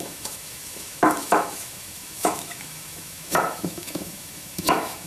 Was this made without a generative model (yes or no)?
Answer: no